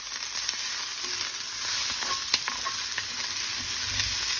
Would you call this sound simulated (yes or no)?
no